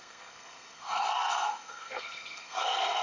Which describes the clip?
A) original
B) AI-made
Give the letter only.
B